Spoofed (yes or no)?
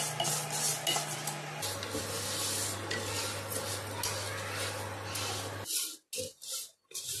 no